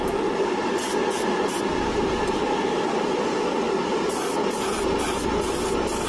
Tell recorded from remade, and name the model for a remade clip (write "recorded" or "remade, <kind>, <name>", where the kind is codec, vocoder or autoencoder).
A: recorded